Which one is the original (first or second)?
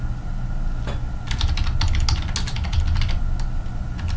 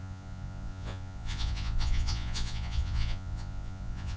first